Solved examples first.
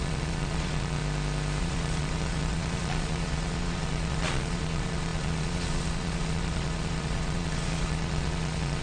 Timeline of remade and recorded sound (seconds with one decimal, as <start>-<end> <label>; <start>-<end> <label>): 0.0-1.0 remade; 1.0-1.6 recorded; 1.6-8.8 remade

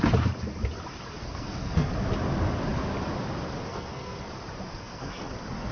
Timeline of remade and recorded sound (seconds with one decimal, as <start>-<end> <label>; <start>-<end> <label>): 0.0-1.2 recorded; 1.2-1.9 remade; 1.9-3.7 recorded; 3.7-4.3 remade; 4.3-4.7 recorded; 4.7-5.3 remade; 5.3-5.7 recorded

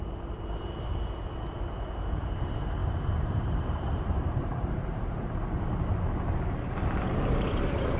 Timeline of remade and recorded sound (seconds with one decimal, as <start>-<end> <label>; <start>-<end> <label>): 0.0-2.8 recorded; 2.8-5.6 remade; 5.6-8.0 recorded

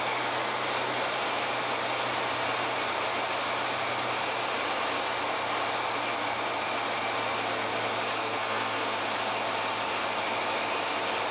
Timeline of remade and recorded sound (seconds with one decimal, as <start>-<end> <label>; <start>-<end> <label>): 0.0-8.2 recorded; 8.2-9.0 remade; 9.0-11.3 recorded